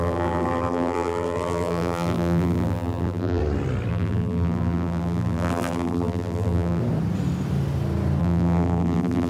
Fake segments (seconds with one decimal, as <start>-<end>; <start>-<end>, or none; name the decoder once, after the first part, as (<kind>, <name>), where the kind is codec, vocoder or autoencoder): 0.0-3.4 (vocoder, BigVGAN v2); 3.9-6.8; 8.2-9.3